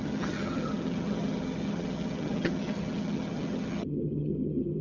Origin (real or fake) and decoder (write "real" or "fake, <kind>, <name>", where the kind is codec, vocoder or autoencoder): fake, vocoder, HiFi-GAN